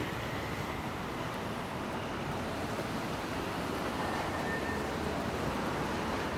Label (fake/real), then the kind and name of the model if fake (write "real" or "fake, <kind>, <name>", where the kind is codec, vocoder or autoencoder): fake, vocoder, BigVGAN v2